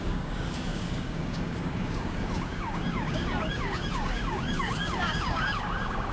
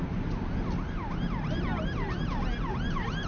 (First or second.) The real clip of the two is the second